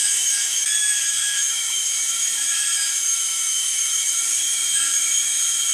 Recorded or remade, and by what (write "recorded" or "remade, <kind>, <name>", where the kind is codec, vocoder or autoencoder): remade, autoencoder, DAC-VAE